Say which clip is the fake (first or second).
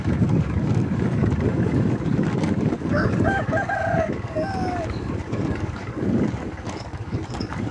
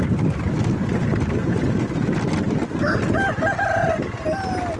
first